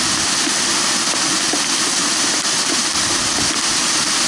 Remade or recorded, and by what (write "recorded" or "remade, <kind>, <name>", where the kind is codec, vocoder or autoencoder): recorded